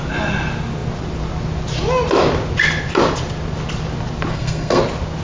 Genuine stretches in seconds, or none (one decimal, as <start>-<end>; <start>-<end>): 0.0-4.3; 4.8-5.2